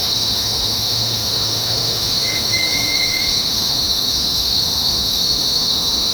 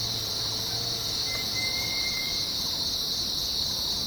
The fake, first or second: first